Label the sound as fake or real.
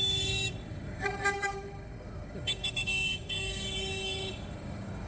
fake